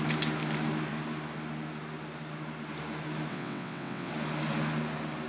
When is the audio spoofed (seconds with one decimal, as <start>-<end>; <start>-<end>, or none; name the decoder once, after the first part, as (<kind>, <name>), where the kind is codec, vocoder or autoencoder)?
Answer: 3.3-4.1 (vocoder, WaveNeXt)